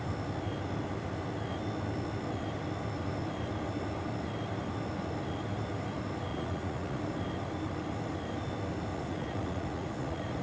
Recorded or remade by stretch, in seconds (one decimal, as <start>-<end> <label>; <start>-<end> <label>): 0.0-6.3 recorded; 6.3-7.0 remade; 7.0-8.9 recorded; 8.9-10.4 remade